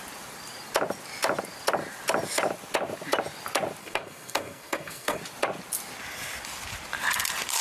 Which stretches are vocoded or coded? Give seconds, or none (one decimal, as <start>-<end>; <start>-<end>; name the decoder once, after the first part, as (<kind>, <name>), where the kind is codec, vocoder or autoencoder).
3.8-5.2 (codec, SNAC)